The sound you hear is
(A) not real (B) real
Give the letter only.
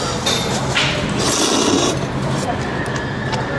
B